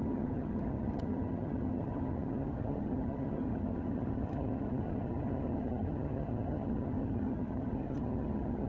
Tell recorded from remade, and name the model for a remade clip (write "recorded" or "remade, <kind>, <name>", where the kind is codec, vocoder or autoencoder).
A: remade, vocoder, HiFi-GAN